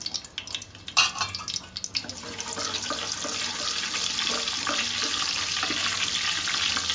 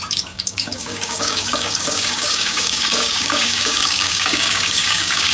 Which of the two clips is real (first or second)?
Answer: first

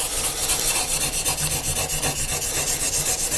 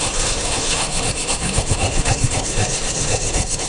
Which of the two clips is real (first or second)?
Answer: first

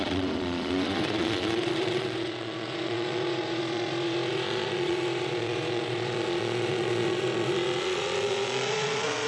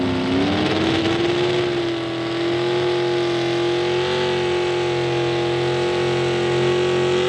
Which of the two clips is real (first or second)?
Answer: second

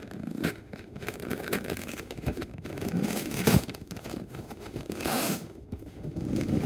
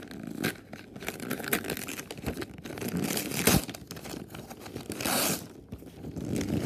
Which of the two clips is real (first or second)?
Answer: second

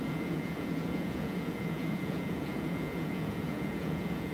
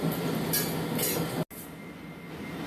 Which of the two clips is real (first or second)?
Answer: second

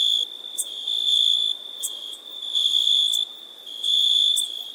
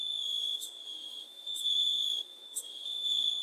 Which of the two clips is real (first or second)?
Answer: first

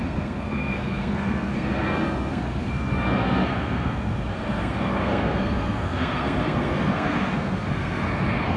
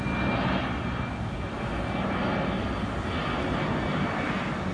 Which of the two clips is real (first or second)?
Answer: second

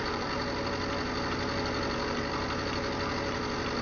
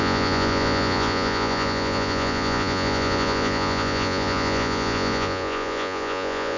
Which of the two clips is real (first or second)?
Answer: first